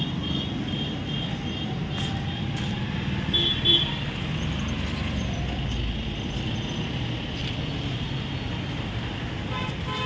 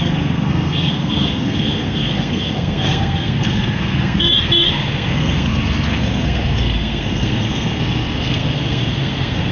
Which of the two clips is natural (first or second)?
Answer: first